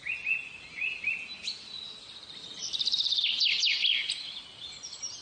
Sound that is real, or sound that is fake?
real